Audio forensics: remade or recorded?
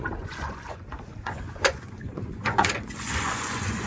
remade